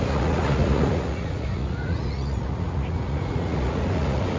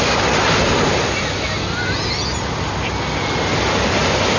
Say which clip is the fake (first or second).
first